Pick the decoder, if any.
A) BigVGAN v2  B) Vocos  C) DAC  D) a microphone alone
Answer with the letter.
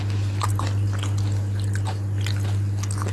D